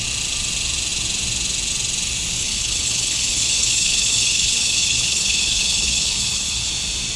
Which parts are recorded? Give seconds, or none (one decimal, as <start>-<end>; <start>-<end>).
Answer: 0.0-2.4; 6.7-7.2